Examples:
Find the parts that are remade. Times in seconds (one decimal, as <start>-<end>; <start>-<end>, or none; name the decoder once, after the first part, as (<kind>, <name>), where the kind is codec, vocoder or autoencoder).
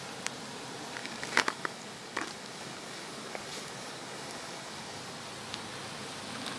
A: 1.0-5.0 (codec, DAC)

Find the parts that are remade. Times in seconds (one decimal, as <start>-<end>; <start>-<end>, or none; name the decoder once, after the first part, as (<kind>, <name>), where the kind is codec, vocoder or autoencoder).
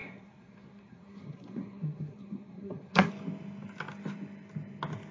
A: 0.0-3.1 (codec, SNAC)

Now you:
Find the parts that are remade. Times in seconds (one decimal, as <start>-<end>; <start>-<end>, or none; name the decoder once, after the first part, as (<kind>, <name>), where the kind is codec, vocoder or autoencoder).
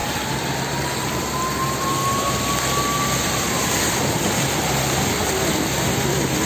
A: none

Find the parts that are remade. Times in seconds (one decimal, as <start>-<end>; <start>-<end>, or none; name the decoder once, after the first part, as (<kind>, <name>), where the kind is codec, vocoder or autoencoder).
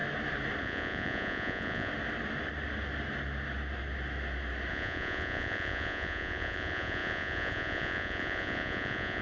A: 0.6-1.9 (vocoder, Vocos); 4.7-9.2